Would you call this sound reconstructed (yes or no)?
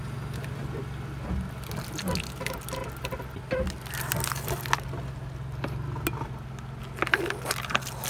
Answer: no